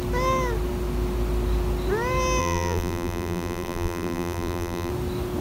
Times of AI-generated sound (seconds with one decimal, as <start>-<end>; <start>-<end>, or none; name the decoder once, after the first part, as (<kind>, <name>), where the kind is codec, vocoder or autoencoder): 2.4-4.9 (vocoder, BigVGAN v2)